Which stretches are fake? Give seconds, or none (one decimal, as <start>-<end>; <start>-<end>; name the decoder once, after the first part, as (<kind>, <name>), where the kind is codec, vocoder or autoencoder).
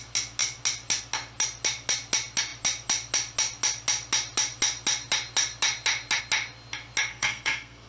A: 7.1-7.9 (codec, SNAC)